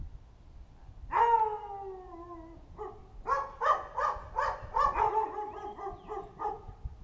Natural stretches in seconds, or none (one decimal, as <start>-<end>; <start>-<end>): 0.0-7.0